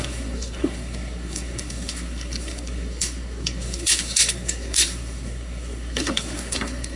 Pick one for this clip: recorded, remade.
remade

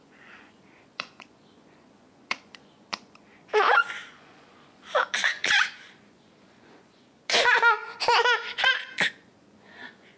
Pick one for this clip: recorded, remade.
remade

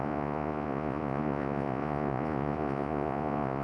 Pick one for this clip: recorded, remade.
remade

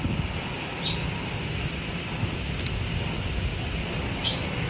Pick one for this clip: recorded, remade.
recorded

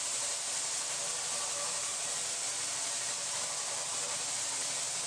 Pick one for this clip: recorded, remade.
recorded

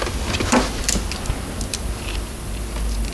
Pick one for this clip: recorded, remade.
recorded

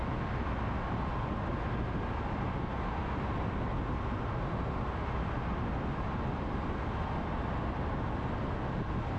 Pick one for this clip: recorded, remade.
recorded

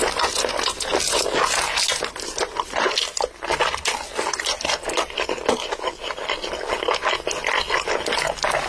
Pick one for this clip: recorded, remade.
recorded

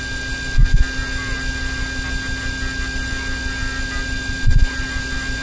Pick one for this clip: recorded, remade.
recorded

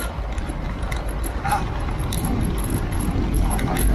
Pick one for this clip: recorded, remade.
recorded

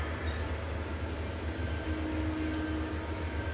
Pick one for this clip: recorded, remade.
recorded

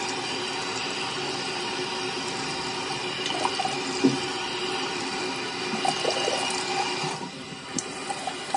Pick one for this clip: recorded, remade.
recorded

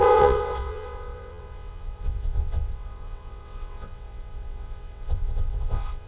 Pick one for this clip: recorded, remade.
remade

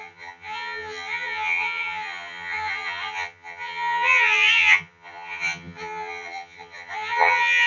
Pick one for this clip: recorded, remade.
remade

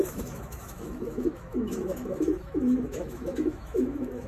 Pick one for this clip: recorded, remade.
remade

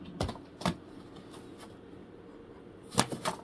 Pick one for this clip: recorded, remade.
recorded